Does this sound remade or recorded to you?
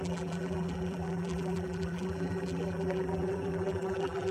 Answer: remade